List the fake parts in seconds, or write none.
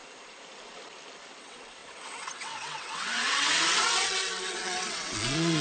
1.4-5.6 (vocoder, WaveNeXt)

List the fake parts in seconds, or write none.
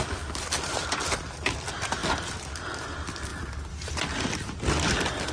none